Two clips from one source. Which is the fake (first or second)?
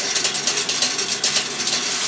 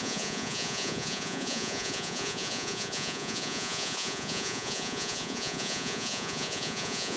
second